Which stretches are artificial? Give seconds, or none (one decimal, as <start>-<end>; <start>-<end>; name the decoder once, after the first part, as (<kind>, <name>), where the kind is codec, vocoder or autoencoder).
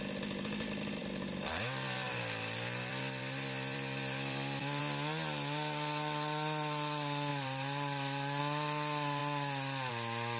1.0-4.8 (vocoder, BigVGAN v2); 7.3-8.4